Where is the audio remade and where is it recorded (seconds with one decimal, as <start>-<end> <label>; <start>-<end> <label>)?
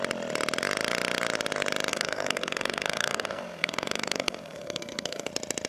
0.0-1.9 recorded; 1.9-5.3 remade; 5.3-5.7 recorded